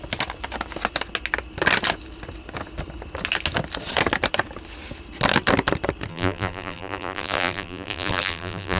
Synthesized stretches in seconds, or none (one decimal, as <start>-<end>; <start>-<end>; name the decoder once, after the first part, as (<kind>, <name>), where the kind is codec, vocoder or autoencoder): 6.1-8.8 (vocoder, BigVGAN v2)